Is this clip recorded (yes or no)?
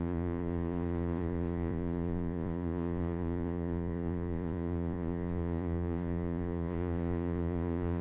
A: no